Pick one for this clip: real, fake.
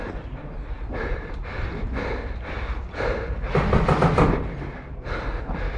real